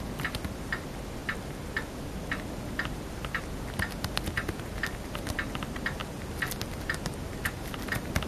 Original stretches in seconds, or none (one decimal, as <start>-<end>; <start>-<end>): 0.0-8.3